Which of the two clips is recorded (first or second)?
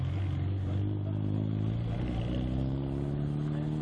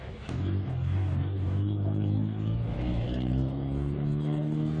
first